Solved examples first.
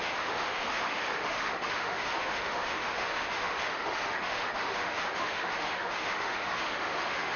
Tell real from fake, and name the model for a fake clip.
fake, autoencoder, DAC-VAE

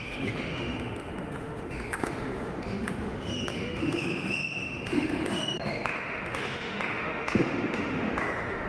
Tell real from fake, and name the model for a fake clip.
fake, autoencoder, DAC-VAE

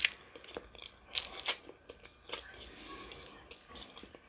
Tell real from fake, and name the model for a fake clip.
real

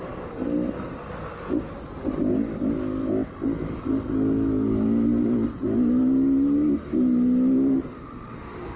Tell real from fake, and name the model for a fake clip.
real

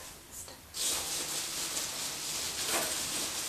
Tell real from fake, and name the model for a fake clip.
real